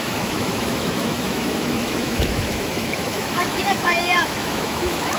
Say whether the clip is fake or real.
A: fake